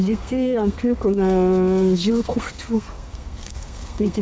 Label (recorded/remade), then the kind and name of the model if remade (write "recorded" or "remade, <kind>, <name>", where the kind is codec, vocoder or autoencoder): remade, codec, SNAC